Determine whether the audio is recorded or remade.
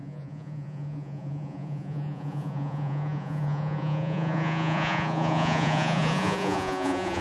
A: remade